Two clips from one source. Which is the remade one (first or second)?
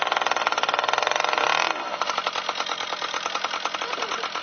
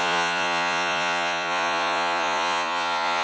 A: second